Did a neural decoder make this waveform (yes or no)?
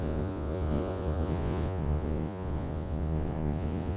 yes